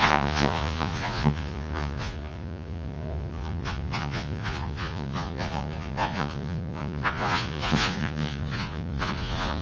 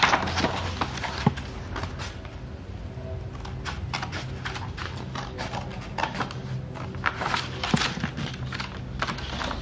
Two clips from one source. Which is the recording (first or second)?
second